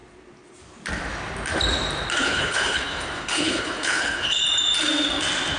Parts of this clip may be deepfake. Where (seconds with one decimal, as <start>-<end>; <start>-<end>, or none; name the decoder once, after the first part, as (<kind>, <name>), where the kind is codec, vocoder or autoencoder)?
2.2-4.4 (codec, HILCodec)